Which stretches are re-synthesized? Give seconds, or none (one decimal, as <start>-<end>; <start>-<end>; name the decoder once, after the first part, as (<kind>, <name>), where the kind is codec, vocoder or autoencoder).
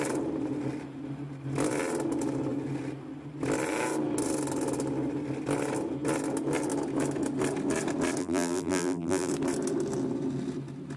8.2-9.3 (vocoder, BigVGAN v2)